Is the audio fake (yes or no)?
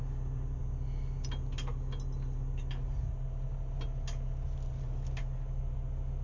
no